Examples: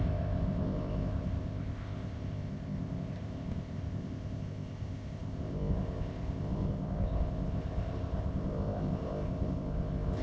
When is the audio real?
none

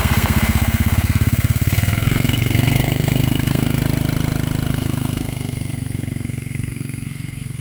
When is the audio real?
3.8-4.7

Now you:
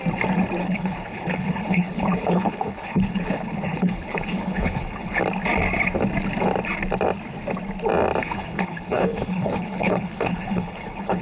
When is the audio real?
0.0-0.6; 5.2-8.2

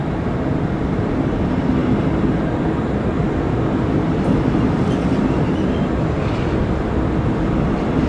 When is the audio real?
none